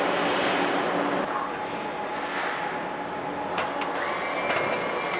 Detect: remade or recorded recorded